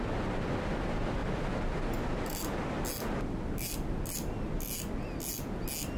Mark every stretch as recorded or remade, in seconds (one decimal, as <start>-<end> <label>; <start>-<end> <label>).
0.0-6.0 recorded